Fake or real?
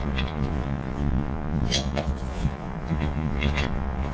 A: fake